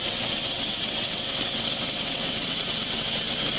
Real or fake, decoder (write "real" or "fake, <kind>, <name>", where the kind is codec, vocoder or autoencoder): fake, vocoder, WaveNeXt